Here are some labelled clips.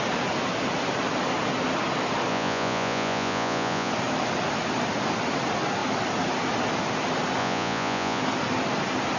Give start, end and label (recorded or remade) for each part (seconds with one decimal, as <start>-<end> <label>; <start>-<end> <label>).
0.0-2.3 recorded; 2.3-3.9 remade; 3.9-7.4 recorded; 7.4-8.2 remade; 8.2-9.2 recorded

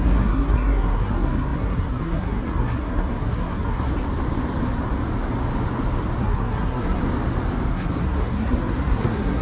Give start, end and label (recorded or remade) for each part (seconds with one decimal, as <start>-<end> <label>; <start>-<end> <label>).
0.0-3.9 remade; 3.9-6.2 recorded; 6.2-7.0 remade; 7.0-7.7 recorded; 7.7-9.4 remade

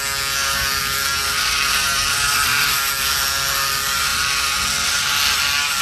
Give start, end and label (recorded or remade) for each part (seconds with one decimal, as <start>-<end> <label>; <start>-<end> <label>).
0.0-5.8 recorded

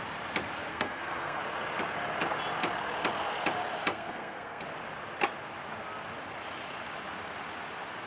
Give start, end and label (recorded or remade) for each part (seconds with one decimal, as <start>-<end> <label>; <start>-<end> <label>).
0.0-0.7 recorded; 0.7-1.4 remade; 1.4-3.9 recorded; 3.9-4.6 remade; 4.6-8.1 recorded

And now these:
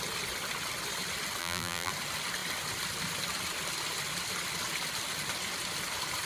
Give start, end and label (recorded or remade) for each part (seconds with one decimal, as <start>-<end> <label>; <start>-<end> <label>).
0.0-1.4 recorded; 1.4-1.9 remade; 1.9-6.3 recorded